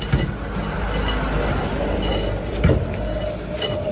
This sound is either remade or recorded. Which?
recorded